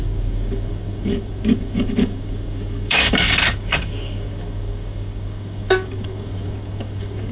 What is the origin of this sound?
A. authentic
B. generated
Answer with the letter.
B